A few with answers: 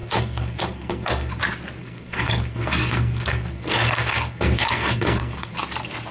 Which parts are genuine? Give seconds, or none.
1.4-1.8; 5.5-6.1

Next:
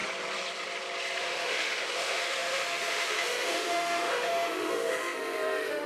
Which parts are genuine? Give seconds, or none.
0.0-1.2

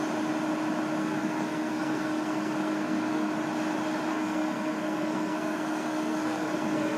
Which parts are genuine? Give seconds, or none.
0.0-1.0; 3.3-4.1

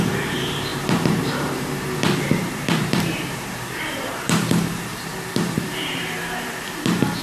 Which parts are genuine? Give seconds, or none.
none

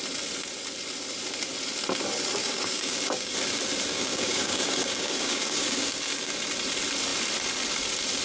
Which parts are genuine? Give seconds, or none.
0.0-2.4; 3.3-3.9; 6.3-8.2

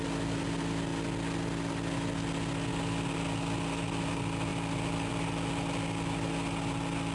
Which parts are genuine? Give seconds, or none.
0.9-2.7

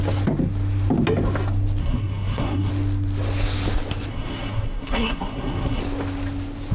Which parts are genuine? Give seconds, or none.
0.0-1.8; 2.7-4.1; 5.8-6.7

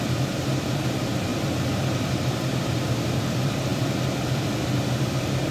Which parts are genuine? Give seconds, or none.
none